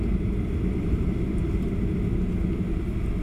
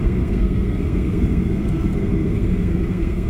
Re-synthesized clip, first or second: second